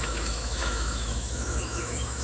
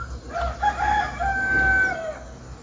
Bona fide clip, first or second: second